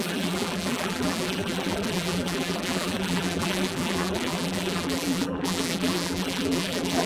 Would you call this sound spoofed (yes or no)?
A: yes